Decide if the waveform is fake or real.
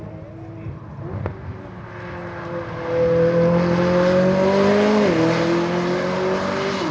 real